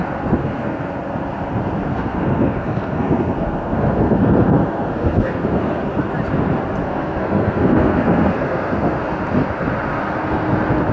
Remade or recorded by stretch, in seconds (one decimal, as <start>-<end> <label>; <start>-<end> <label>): 0.0-0.4 recorded; 0.4-0.9 remade; 0.9-1.9 recorded; 1.9-5.8 remade; 5.8-6.8 recorded; 6.8-9.0 remade; 9.0-10.9 recorded